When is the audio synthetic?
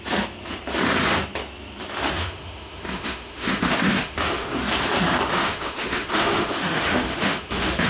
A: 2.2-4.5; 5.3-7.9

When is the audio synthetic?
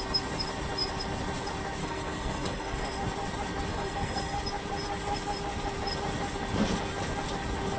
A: 1.8-3.0; 3.7-4.4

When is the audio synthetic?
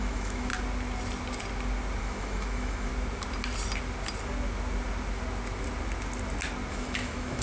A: 0.0-0.5; 2.0-2.9; 6.7-7.4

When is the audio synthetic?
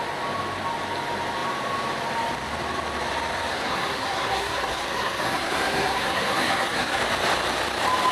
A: 3.5-7.0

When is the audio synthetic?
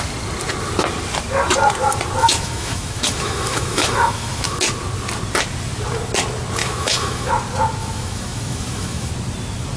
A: 2.2-4.6; 6.6-7.3; 7.8-9.1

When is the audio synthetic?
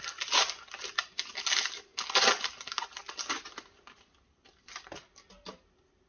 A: none